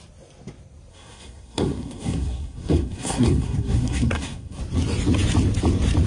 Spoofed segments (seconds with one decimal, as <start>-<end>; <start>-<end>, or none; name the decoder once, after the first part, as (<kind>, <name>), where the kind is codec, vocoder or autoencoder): 0.9-4.6 (codec, SNAC)